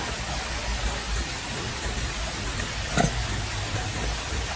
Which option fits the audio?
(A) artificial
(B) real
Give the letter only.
B